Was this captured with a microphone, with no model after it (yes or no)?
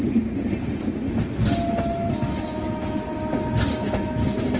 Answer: yes